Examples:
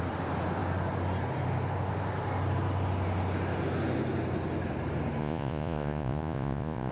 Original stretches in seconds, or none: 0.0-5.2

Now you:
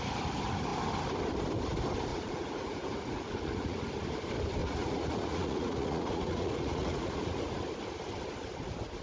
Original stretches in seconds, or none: 0.0-2.1; 3.9-4.6; 7.6-9.0

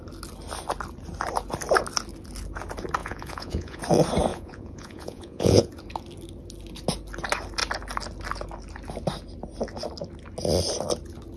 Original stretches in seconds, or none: 0.0-3.0; 3.8-4.3; 5.7-11.4

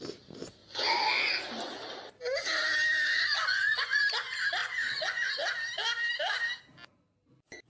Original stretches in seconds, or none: 0.0-0.6; 1.3-3.1; 4.0-4.6; 5.3-7.7

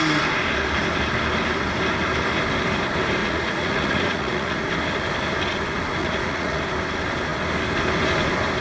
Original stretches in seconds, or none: 0.0-3.2; 4.7-6.0; 6.6-8.6

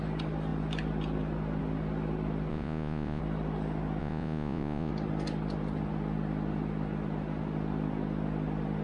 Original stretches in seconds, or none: 0.0-2.5; 3.2-4.0; 4.9-8.8

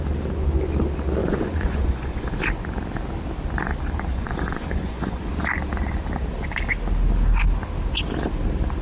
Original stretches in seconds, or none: 0.0-1.2; 2.3-4.1; 5.3-8.8

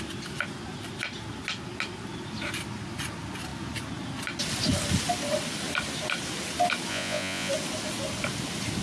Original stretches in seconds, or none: 0.0-6.9; 7.5-8.8